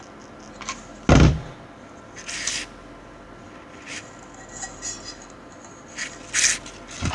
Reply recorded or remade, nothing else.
recorded